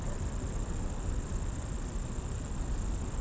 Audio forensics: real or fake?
real